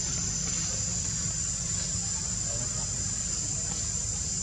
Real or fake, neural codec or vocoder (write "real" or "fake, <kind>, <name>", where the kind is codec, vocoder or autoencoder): real